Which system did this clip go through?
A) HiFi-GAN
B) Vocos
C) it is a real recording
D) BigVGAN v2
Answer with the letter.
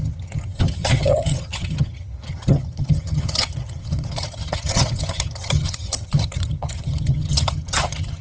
A